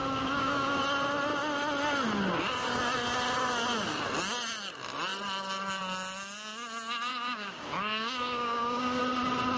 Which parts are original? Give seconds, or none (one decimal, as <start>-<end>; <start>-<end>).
0.8-7.1; 9.0-9.6